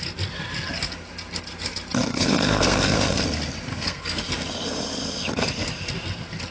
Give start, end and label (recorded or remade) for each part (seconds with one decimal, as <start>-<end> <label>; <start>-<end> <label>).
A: 0.0-2.1 recorded; 2.1-3.2 remade; 3.2-3.7 recorded; 3.7-4.2 remade; 4.2-6.5 recorded